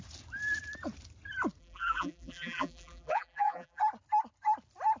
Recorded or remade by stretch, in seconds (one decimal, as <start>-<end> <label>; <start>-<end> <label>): 0.0-1.6 recorded; 1.6-3.8 remade; 3.8-5.0 recorded